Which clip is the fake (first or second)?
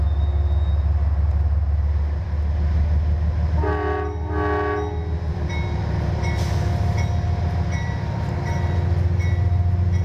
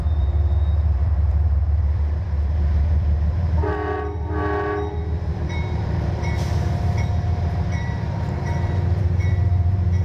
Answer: second